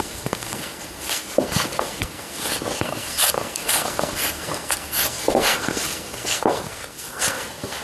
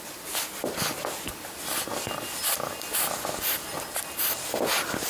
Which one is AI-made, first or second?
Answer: first